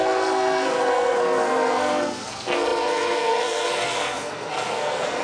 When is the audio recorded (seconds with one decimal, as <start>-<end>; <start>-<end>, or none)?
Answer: none